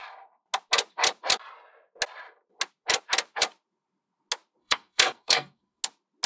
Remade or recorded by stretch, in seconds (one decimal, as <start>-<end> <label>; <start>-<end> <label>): 0.0-4.6 recorded; 4.6-5.8 remade; 5.8-6.3 recorded